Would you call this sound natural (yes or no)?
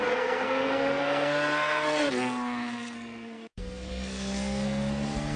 no